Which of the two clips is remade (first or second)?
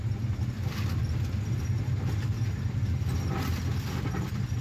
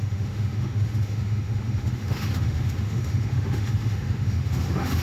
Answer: second